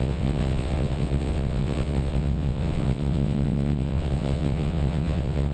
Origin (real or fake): fake